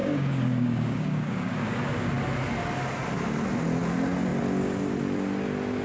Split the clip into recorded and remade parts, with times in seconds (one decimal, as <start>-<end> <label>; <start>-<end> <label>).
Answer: 0.0-2.1 remade; 2.1-5.8 recorded

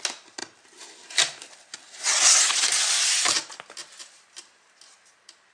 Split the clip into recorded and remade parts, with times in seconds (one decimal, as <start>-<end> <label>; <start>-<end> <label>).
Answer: 0.0-0.4 recorded; 0.4-3.3 remade; 3.3-5.5 recorded

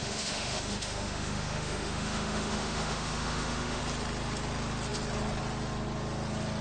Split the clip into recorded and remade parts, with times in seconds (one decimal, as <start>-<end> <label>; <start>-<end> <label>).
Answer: 0.0-3.8 remade; 3.8-6.6 recorded

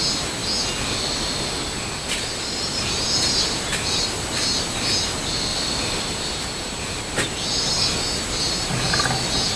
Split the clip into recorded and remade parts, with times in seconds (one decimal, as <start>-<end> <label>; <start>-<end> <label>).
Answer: 0.0-9.6 recorded